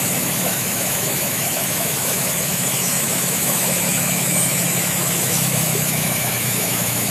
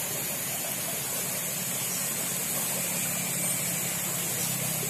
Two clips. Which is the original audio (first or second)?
second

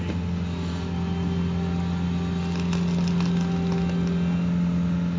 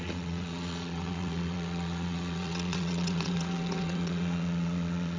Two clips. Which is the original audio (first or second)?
first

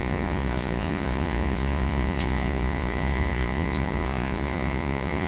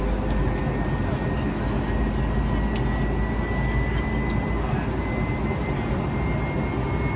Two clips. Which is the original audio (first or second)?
second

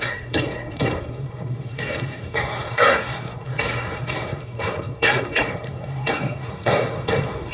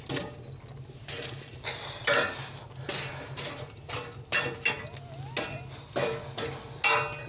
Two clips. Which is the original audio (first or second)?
second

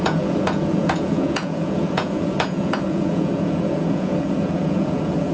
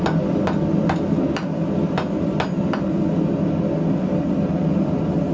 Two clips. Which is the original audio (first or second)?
second